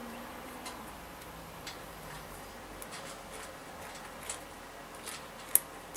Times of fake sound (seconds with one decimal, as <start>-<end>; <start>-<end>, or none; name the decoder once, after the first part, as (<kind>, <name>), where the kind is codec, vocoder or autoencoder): 0.0-2.5 (vocoder, BigVGAN v2)